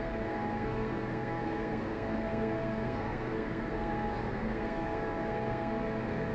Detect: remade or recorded remade